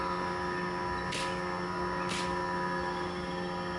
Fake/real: real